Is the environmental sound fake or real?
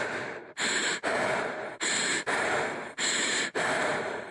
fake